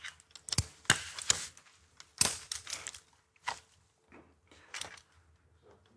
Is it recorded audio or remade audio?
recorded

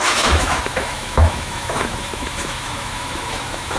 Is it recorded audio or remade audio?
remade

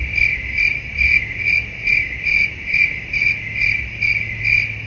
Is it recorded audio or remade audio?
recorded